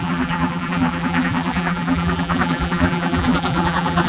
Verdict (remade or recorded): remade